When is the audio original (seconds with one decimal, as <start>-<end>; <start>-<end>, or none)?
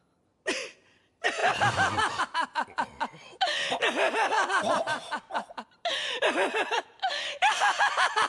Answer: none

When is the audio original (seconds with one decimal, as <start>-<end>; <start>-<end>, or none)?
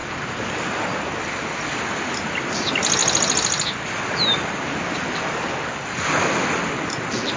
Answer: 0.0-7.4